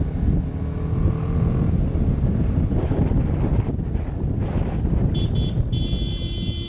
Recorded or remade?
recorded